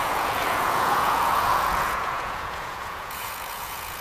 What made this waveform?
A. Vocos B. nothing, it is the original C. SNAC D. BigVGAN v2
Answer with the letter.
A